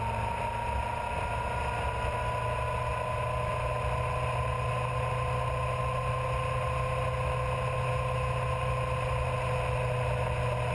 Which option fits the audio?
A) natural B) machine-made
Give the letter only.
A